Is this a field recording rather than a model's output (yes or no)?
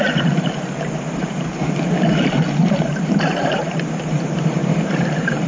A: no